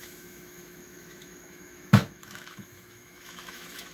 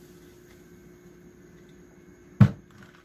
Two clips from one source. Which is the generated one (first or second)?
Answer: first